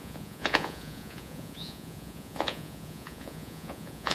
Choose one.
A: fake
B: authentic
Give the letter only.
A